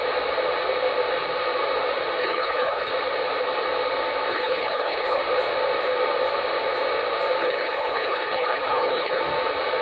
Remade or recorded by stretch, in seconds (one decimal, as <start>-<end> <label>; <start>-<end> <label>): 0.0-2.2 recorded; 2.2-2.9 remade; 2.9-4.3 recorded; 4.3-5.2 remade; 5.2-7.4 recorded; 7.4-9.2 remade; 9.2-9.8 recorded